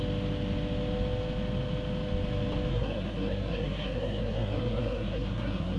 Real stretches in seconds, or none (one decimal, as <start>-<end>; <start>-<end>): 0.0-2.7